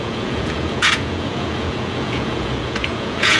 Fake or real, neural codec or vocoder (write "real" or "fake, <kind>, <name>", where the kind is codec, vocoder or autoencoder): fake, vocoder, Vocos